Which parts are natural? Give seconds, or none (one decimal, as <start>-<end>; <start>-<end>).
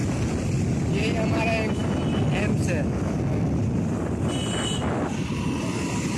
0.0-6.2